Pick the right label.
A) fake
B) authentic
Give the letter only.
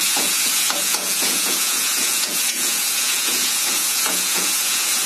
A